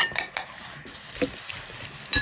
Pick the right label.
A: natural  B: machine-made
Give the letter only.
A